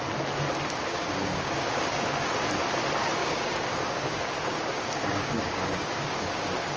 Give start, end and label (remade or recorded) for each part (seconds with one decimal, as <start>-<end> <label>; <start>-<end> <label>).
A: 0.0-0.9 recorded; 0.9-2.4 remade; 2.4-3.2 recorded; 3.2-6.8 remade